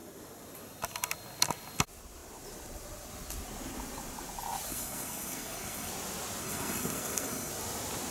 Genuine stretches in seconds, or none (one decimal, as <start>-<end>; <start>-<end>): 0.0-4.7; 5.9-6.4; 7.5-8.1